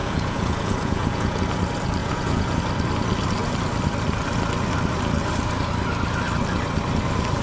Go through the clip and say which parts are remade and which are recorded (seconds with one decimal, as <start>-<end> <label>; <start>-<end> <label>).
0.0-1.4 remade; 1.4-2.0 recorded; 2.0-2.6 remade; 2.6-7.4 recorded